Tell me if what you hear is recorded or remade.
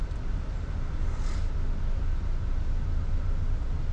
recorded